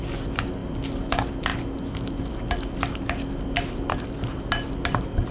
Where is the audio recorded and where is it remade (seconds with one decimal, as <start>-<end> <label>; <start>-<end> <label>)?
0.0-5.3 recorded